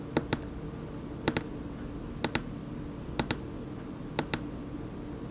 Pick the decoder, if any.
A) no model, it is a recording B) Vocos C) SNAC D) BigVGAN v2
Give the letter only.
A